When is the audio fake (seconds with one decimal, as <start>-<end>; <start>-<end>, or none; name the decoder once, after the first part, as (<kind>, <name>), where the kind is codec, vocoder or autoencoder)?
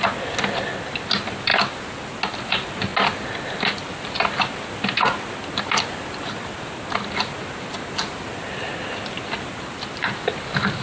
none